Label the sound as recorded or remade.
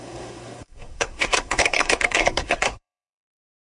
remade